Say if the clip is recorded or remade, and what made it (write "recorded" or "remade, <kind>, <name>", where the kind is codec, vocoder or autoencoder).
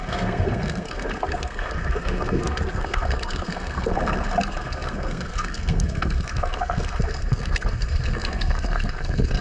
remade, codec, SNAC